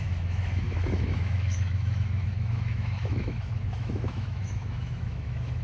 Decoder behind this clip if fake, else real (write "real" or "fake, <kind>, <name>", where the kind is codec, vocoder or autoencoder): fake, autoencoder, DAC-VAE